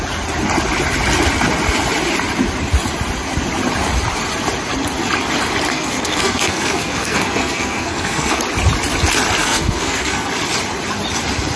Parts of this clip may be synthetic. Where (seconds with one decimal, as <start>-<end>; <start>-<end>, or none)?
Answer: 5.7-8.4; 9.4-10.3